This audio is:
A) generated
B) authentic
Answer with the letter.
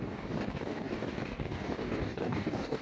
A